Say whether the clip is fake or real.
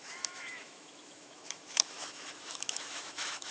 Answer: fake